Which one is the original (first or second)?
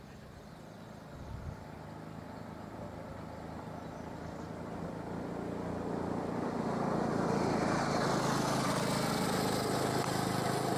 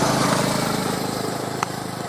first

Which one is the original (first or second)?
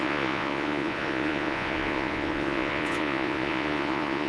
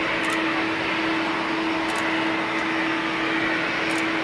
second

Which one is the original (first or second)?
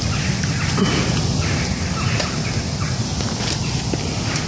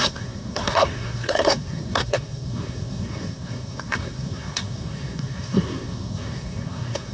first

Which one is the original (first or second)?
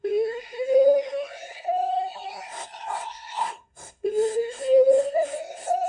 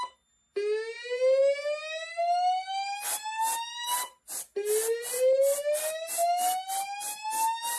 second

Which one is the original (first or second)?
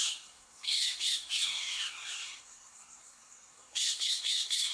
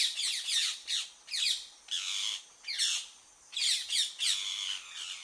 second